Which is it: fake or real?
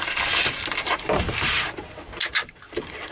real